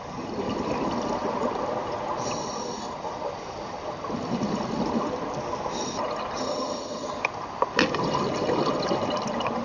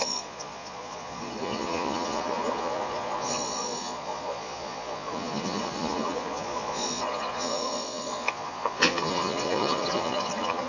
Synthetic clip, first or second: second